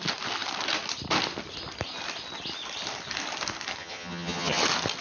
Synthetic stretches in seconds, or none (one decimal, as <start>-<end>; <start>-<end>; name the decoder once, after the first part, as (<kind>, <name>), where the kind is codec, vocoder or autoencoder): 3.8-4.6 (vocoder, HiFi-GAN)